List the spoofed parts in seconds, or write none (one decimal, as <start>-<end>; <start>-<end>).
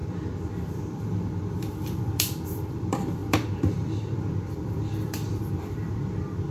0.0-6.5